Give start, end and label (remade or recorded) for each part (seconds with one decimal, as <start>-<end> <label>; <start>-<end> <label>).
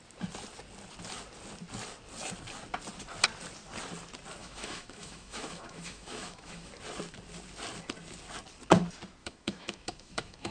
0.0-4.4 recorded; 4.4-6.7 remade; 6.7-9.2 recorded; 9.2-10.5 remade